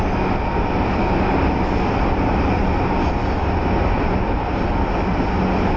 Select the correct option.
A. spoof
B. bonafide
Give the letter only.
B